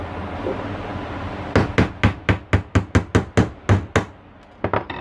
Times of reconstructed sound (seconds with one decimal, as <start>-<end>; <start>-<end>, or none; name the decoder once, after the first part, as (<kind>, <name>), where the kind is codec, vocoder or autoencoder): none